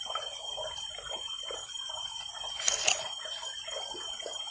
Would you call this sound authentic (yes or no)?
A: yes